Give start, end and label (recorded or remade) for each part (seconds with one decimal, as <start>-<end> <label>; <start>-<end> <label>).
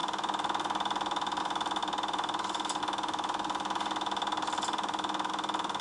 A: 0.0-5.8 recorded